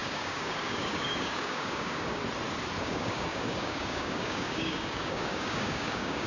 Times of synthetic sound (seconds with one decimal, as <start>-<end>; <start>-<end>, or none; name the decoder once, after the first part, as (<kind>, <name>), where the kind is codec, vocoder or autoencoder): 0.0-2.2 (codec, DAC); 2.8-6.3